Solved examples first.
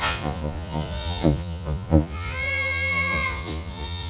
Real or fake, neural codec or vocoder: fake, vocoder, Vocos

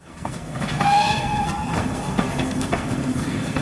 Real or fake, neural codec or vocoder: fake, codec, SNAC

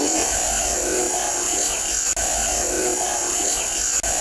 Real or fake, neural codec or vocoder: real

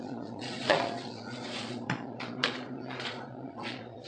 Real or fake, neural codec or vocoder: fake, vocoder, Vocos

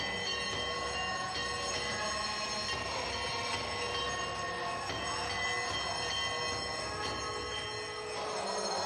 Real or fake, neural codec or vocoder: real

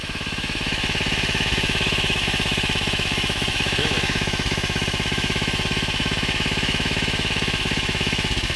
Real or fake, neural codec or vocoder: fake, autoencoder, DAC-VAE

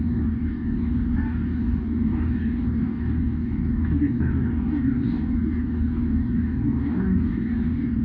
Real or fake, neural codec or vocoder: fake, codec, DAC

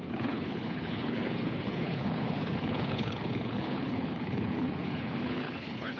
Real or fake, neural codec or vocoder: fake, codec, HILCodec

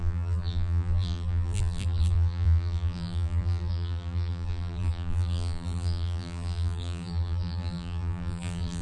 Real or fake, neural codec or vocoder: fake, vocoder, BigVGAN v2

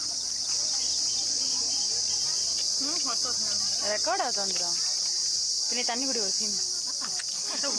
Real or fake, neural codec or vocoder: real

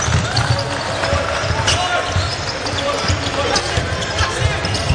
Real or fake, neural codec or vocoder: real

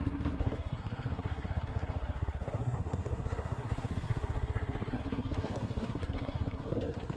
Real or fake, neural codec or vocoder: fake, codec, SNAC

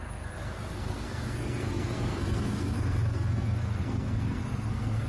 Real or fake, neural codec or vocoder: fake, codec, SNAC